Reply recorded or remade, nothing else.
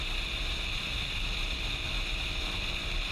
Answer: recorded